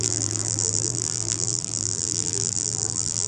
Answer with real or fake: fake